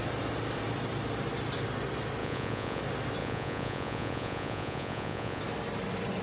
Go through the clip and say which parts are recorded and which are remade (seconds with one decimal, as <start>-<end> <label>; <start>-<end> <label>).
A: 0.0-2.2 recorded; 2.2-2.8 remade; 2.8-3.2 recorded; 3.2-5.4 remade; 5.4-6.2 recorded